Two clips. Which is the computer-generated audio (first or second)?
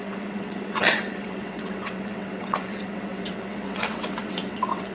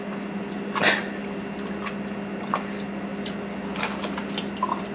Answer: first